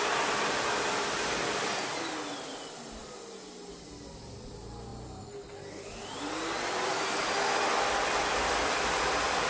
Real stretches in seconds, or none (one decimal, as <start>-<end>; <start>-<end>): 0.0-9.5